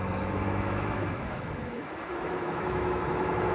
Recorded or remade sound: remade